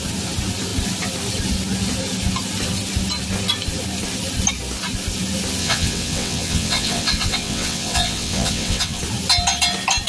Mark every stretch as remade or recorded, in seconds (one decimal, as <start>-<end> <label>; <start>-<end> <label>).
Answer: 0.0-5.6 recorded; 5.6-9.0 remade; 9.0-10.1 recorded